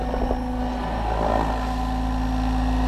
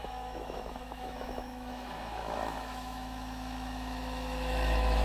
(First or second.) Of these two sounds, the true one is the first